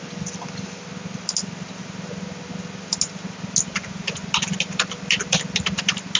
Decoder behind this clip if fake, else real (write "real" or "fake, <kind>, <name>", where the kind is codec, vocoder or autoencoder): real